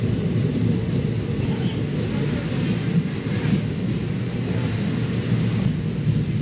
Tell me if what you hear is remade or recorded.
recorded